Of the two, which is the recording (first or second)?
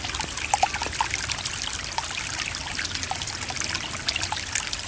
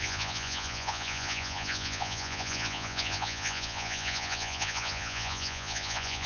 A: first